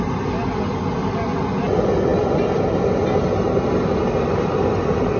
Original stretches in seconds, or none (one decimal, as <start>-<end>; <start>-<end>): 0.0-5.2